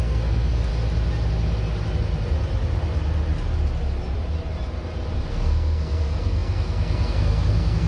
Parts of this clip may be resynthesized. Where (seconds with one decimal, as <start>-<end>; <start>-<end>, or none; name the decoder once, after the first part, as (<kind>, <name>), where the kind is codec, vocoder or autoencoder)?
0.0-0.7 (codec, SNAC); 5.3-7.9